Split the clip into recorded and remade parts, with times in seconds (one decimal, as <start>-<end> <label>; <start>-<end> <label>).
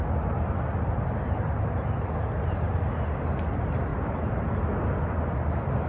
0.0-5.9 recorded